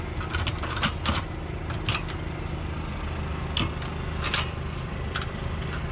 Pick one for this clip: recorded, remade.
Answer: recorded